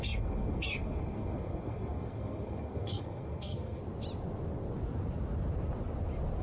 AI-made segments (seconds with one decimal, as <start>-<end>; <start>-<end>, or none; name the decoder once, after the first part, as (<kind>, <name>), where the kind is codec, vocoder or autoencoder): 0.0-3.8 (codec, SNAC)